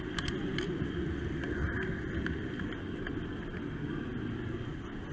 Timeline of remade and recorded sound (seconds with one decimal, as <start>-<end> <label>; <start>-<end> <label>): 0.0-5.1 recorded